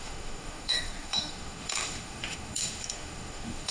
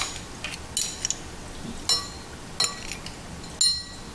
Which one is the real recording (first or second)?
second